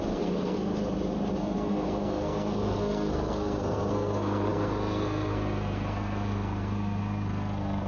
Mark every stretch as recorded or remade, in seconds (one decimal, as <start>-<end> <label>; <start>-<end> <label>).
0.0-0.7 remade; 0.7-1.3 recorded; 1.3-7.9 remade